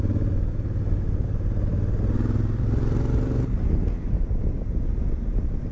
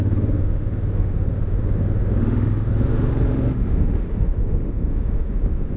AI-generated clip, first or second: second